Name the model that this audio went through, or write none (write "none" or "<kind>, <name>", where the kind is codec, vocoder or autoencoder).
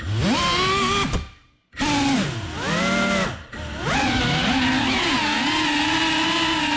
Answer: none